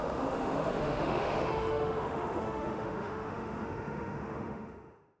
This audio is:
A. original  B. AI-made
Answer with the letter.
B